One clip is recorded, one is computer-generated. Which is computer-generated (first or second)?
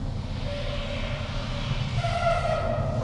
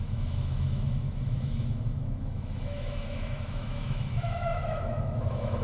second